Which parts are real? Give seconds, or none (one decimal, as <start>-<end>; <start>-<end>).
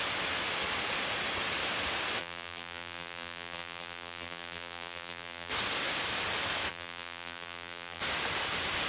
0.0-2.2; 5.5-6.7; 8.0-8.9